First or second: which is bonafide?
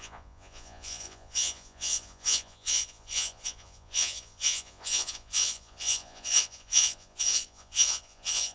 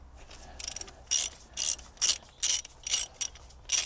second